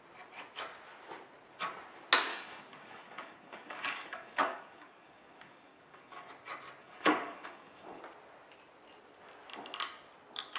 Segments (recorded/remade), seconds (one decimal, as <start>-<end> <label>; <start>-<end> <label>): 0.0-2.3 recorded; 2.3-6.3 remade; 6.3-6.8 recorded; 6.8-8.0 remade; 8.0-10.6 recorded